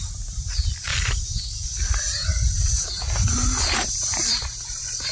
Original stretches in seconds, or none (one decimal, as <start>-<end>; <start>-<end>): 0.9-3.6